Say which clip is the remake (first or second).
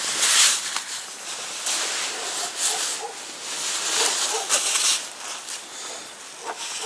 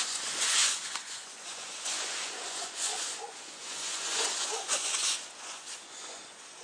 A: second